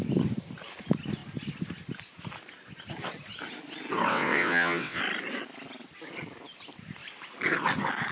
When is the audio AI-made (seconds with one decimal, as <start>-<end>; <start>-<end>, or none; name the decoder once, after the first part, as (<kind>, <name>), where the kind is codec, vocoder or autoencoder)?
4.1-5.0 (vocoder, WaveNeXt)